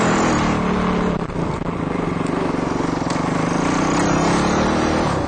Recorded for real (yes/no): yes